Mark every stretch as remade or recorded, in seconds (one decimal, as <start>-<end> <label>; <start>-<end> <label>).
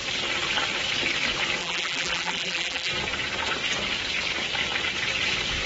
0.0-1.6 recorded; 1.6-2.9 remade; 2.9-5.7 recorded